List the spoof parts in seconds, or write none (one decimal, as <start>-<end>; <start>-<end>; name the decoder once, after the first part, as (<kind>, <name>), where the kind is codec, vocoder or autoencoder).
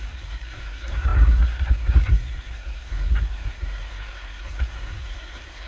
0.0-5.7 (codec, SNAC)